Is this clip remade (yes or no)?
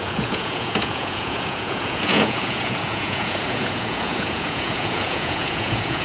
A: yes